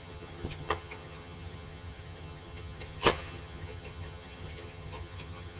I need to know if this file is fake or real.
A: fake